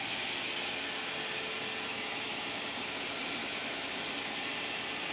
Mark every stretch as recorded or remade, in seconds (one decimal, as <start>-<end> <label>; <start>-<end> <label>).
0.0-1.9 recorded; 1.9-2.6 remade; 2.6-3.4 recorded; 3.4-4.0 remade; 4.0-5.1 recorded